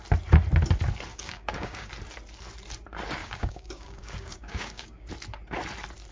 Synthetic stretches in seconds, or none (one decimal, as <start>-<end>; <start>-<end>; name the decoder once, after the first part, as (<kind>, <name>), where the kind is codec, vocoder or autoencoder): 1.1-1.9 (codec, DAC); 3.2-5.1